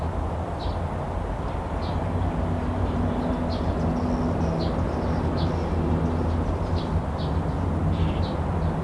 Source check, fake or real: real